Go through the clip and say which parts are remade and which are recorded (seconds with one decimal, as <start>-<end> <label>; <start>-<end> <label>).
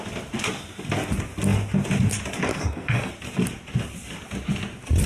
0.0-2.5 recorded; 2.5-3.1 remade; 3.1-5.1 recorded